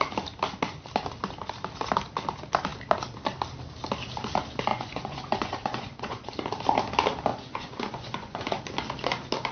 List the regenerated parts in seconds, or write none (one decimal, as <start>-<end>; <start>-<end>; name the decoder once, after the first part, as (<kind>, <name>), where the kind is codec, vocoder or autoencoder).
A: 4.7-6.3 (vocoder, Vocos); 7.3-8.6